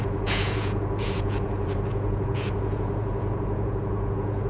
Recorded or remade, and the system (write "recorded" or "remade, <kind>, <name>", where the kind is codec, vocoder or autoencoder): remade, vocoder, Vocos